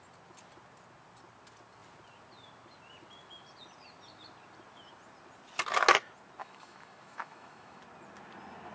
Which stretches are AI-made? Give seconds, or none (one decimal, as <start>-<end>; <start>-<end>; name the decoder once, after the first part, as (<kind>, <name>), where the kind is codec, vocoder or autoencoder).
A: 6.4-7.8 (autoencoder, DAC-VAE)